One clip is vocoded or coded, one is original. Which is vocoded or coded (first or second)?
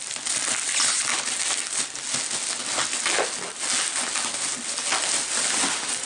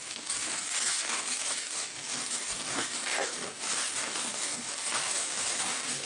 second